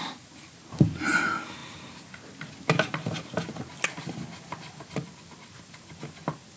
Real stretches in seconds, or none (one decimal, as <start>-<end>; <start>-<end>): 0.0-6.6